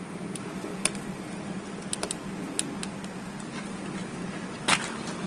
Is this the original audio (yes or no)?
yes